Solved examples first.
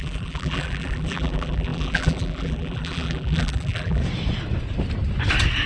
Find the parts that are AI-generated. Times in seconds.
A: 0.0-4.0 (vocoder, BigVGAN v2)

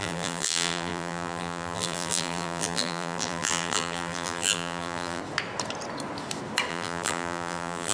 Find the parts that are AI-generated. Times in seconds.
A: 0.0-5.2 (vocoder, BigVGAN v2); 6.7-7.9

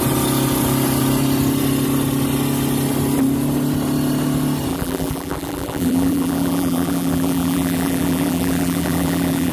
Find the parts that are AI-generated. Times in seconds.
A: 4.7-9.5 (vocoder, BigVGAN v2)

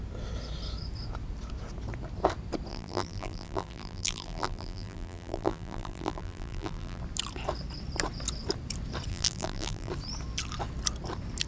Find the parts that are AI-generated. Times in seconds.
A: 2.7-7.0 (vocoder, BigVGAN v2); 9.1-9.9

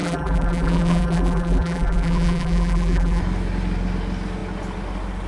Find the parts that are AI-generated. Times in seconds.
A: 0.0-3.2 (vocoder, BigVGAN v2)

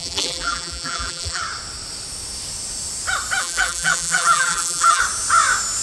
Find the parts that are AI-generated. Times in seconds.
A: 0.0-1.4 (vocoder, BigVGAN v2); 3.4-5.0